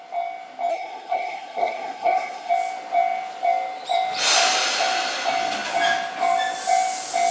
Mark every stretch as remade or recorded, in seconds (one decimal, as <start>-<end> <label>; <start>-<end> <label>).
0.0-0.7 recorded; 0.7-2.5 remade; 2.5-7.3 recorded